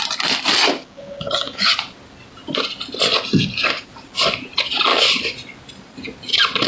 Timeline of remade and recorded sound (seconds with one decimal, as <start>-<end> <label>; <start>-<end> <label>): 0.0-0.8 recorded; 0.8-1.7 remade; 1.7-6.7 recorded